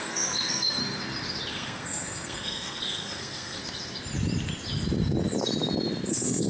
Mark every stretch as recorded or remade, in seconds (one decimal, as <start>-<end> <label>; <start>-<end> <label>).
0.0-0.8 remade; 0.8-1.5 recorded; 1.5-3.6 remade; 3.6-6.1 recorded; 6.1-6.5 remade